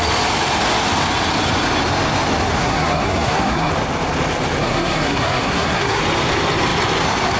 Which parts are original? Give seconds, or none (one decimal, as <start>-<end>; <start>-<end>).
0.0-2.6; 3.7-4.6; 6.0-7.4